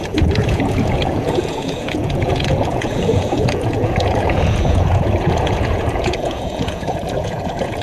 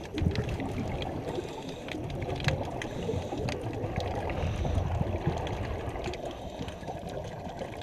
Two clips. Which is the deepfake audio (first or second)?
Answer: first